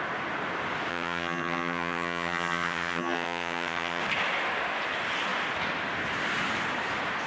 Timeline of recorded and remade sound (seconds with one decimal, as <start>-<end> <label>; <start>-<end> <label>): 0.0-0.9 recorded; 0.9-4.0 remade; 4.0-7.3 recorded